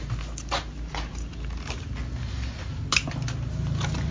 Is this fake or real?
real